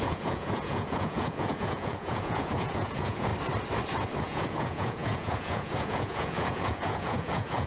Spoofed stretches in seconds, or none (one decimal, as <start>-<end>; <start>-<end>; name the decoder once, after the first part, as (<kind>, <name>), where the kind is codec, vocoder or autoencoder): 0.0-3.3 (vocoder, Vocos); 4.2-7.7